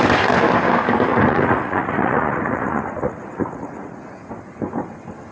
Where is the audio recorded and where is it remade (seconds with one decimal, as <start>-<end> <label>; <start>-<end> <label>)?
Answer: 0.0-1.1 recorded; 1.1-4.3 remade; 4.3-5.3 recorded

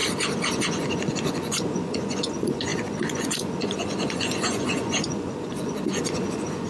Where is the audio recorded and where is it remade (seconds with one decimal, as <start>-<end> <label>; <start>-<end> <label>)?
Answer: 0.0-0.6 recorded; 0.6-6.7 remade

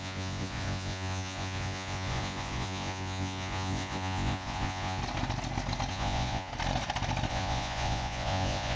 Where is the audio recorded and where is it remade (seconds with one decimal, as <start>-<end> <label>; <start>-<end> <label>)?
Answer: 0.0-5.0 remade; 5.0-5.9 recorded; 5.9-6.5 remade; 6.5-7.3 recorded; 7.3-8.8 remade

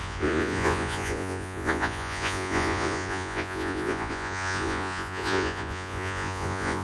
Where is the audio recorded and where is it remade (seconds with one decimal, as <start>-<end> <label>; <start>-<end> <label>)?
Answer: 0.0-6.8 remade

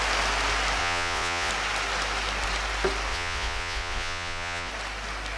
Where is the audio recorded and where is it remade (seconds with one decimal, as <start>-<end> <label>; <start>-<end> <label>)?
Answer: 0.0-0.8 recorded; 0.8-1.5 remade; 1.5-3.1 recorded; 3.1-4.7 remade; 4.7-5.4 recorded

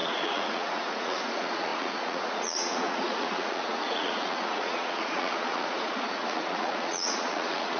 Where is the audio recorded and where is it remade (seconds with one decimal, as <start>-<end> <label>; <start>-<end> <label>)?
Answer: 0.0-7.8 remade